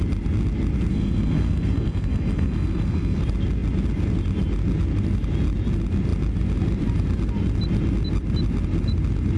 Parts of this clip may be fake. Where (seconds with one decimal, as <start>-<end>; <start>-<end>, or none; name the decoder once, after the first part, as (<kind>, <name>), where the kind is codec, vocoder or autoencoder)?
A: 0.9-3.2 (codec, SNAC)